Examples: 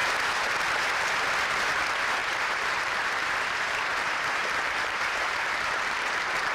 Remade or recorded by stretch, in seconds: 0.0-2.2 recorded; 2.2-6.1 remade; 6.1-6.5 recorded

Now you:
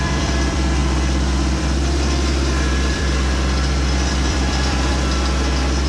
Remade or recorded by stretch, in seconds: 0.0-4.9 remade; 4.9-5.9 recorded

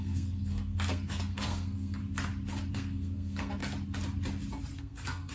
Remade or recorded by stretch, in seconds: 0.0-2.0 remade; 2.0-2.7 recorded; 2.7-3.6 remade; 3.6-4.8 recorded; 4.8-5.3 remade

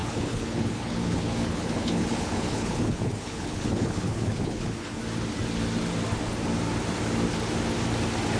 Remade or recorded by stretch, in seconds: 0.0-5.0 remade; 5.0-8.4 recorded

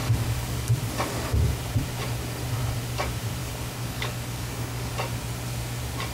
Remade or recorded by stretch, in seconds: 0.0-0.7 remade; 0.7-3.4 recorded; 3.4-4.9 remade; 4.9-6.1 recorded

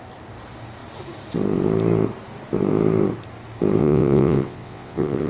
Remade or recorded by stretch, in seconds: 0.0-3.8 recorded; 3.8-5.3 remade

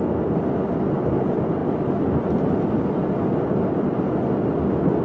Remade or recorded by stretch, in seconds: 0.0-5.0 recorded